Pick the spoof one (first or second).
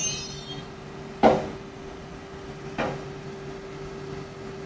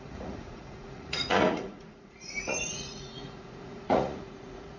second